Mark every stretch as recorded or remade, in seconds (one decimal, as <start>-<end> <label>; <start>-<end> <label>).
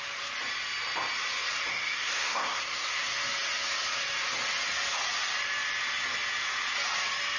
0.0-1.7 recorded; 1.7-3.0 remade; 3.0-7.4 recorded